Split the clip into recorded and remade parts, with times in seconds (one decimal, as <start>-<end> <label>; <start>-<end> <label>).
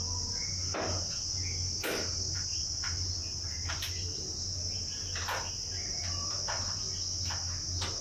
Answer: 0.0-4.9 recorded; 4.9-5.7 remade; 5.7-8.0 recorded